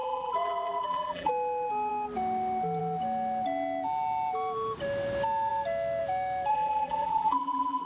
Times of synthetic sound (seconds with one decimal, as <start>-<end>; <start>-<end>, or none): 0.0-1.3; 6.5-7.9

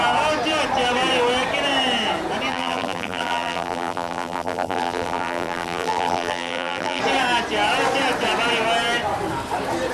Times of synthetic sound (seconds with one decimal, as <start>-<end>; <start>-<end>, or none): 2.5-7.0

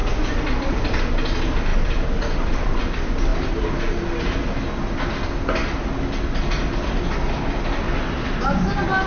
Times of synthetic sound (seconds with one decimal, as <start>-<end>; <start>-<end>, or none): 0.0-1.0; 1.7-2.8